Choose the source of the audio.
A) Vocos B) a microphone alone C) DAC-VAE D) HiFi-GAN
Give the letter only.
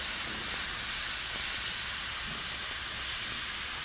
B